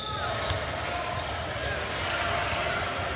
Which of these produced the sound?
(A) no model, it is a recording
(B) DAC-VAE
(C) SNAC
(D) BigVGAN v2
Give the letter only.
A